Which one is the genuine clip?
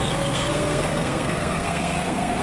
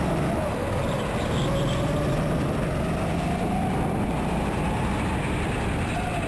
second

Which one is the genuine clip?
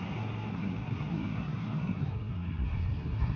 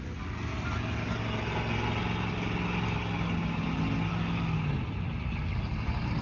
second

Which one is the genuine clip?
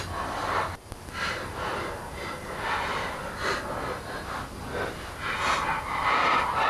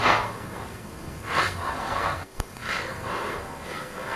first